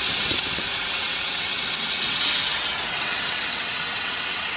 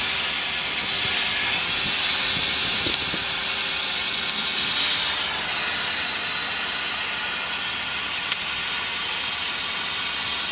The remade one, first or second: first